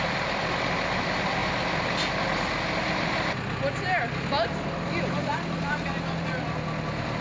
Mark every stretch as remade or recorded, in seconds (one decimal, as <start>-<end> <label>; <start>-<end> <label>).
0.0-7.2 recorded